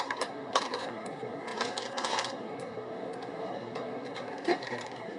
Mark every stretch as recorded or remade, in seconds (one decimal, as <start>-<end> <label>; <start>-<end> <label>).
0.0-5.2 remade